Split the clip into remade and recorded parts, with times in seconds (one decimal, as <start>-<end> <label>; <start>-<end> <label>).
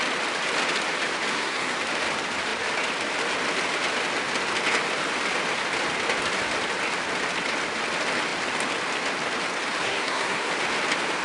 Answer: 0.0-1.3 recorded; 1.3-1.8 remade; 1.8-9.8 recorded; 9.8-10.5 remade; 10.5-11.2 recorded